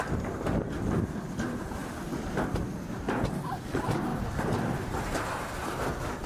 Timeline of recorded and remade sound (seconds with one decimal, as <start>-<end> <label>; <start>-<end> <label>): 0.0-6.3 recorded

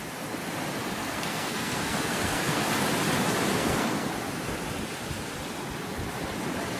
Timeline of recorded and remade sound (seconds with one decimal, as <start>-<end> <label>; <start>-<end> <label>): 0.0-1.0 recorded; 1.0-2.7 remade; 2.7-3.5 recorded; 3.5-4.1 remade; 4.1-6.8 recorded

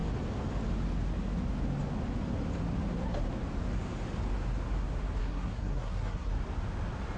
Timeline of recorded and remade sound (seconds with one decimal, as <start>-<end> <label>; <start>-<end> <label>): 0.0-5.2 recorded; 5.2-6.3 remade; 6.3-7.2 recorded

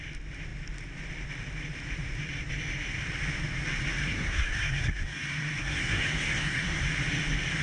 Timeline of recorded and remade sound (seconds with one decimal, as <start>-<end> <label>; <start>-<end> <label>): 0.0-4.0 recorded; 4.0-6.8 remade; 6.8-7.6 recorded

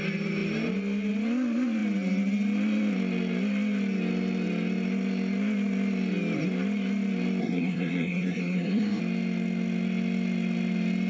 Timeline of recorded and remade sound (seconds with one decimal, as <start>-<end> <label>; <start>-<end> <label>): 0.0-7.4 recorded; 7.4-9.0 remade; 9.0-11.1 recorded

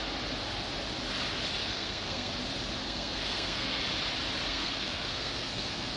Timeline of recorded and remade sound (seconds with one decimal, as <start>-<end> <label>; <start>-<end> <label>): 0.0-1.6 recorded; 1.6-2.3 remade; 2.3-2.8 recorded; 2.8-3.8 remade; 3.8-4.5 recorded; 4.5-6.0 remade

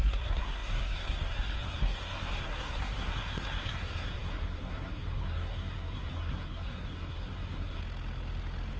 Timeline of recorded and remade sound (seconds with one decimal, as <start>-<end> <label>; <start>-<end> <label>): 0.0-7.8 remade; 7.8-8.8 recorded

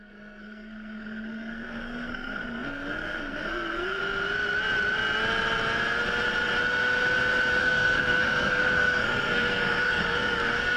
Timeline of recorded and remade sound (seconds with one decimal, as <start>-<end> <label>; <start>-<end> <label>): 0.0-4.0 remade; 4.0-7.6 recorded; 7.6-10.8 remade